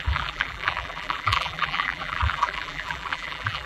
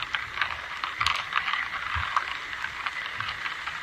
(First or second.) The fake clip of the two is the first